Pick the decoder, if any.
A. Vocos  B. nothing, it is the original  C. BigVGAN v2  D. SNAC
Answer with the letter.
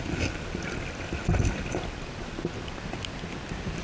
B